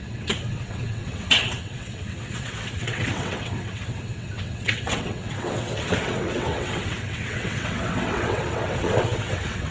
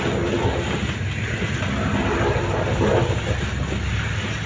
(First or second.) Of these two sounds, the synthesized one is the first